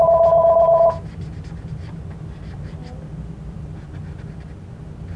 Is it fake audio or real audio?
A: real